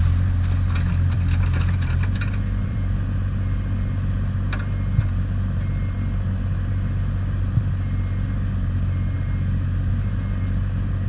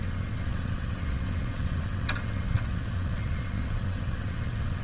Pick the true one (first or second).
first